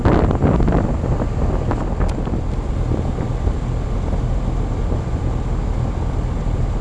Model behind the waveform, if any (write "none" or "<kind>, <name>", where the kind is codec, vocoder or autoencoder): none